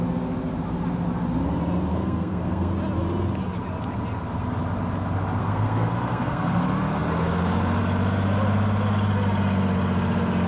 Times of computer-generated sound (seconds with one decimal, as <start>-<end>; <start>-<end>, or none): 1.9-2.7; 5.4-6.6